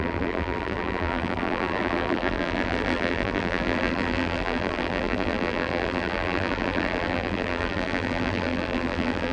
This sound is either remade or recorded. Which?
remade